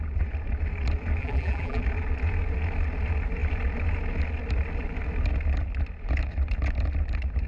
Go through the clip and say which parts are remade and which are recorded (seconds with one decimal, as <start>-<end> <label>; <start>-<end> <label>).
0.0-1.2 recorded; 1.2-1.8 remade; 1.8-7.5 recorded